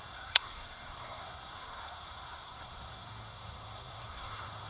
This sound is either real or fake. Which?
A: fake